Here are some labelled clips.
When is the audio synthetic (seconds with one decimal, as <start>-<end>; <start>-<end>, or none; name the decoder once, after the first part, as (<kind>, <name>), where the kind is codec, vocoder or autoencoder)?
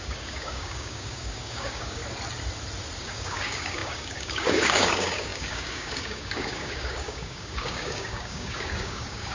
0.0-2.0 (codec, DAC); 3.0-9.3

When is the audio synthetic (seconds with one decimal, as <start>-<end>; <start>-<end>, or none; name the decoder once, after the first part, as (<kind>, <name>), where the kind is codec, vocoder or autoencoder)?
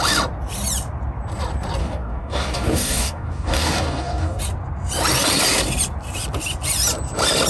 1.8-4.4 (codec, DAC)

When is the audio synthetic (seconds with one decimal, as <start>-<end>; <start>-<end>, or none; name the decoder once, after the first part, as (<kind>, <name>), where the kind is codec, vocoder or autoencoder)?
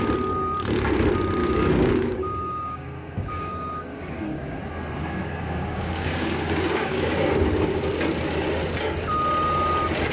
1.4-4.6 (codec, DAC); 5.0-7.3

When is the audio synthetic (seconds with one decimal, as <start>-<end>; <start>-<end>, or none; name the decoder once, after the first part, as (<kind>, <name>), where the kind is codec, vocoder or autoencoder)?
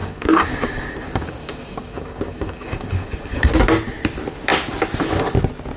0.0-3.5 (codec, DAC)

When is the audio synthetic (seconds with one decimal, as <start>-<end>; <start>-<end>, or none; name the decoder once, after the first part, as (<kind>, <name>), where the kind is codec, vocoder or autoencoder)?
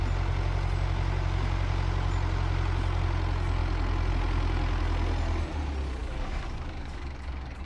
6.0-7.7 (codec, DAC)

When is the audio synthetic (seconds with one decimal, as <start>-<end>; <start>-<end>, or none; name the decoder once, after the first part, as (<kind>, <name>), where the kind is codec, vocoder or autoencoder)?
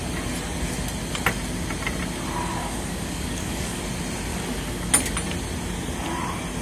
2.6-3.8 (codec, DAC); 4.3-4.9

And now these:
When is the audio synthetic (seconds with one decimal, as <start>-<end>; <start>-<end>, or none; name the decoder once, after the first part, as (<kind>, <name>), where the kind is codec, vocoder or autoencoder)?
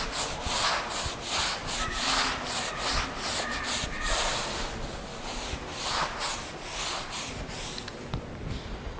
none